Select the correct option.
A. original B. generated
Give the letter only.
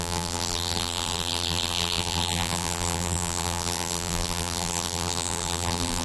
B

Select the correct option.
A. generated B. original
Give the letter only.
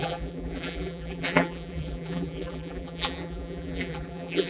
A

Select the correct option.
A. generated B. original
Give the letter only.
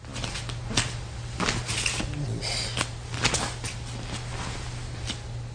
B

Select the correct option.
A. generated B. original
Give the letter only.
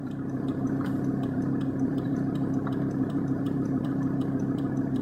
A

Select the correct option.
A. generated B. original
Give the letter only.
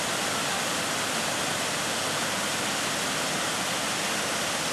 B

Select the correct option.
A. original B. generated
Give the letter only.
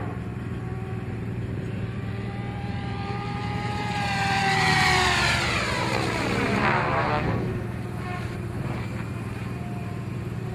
B